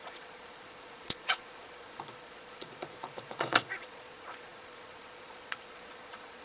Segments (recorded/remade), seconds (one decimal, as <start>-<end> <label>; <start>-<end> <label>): 0.0-6.4 remade